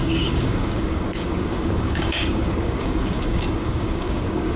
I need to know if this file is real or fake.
fake